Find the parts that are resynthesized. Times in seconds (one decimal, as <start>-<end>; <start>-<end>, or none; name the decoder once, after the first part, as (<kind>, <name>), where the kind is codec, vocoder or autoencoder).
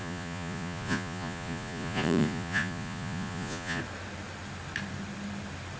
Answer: 0.0-3.8 (vocoder, Vocos)